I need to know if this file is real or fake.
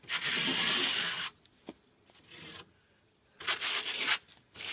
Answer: real